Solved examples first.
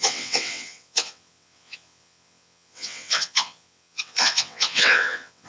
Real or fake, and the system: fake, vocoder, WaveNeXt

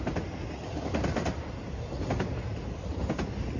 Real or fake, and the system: real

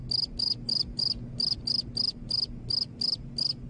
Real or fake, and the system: real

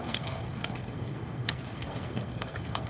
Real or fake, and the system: fake, codec, SNAC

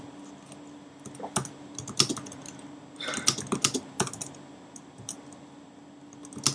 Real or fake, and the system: real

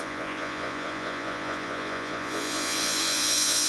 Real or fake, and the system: fake, vocoder, Vocos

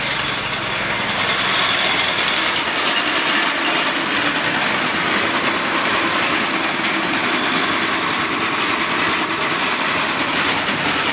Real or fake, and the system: real